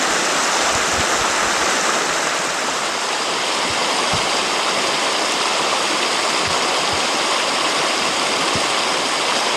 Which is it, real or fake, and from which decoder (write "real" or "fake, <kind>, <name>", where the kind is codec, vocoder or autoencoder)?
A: real